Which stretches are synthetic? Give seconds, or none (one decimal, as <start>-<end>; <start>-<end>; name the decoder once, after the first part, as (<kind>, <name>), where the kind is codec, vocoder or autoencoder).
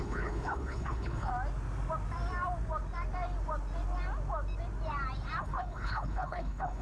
0.0-1.3 (codec, HILCodec); 5.4-6.8